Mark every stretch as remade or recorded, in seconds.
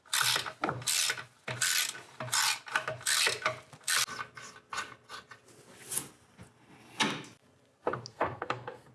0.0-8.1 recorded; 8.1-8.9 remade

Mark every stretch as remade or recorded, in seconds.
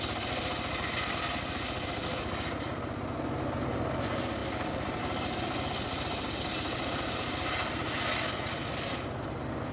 0.0-9.7 recorded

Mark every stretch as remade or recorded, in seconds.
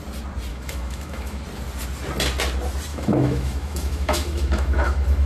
0.0-0.5 recorded; 0.5-1.4 remade; 1.4-2.9 recorded; 2.9-5.3 remade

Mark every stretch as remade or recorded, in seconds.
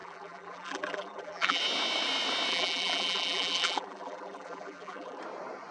0.0-1.6 remade; 1.6-2.5 recorded; 2.5-5.2 remade; 5.2-5.7 recorded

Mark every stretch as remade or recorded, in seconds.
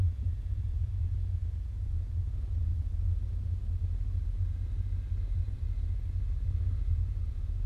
0.0-2.7 remade; 2.7-7.0 recorded; 7.0-7.7 remade